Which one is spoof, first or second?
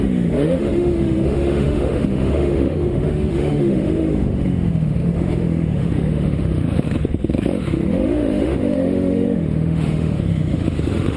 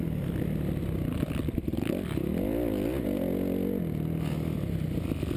first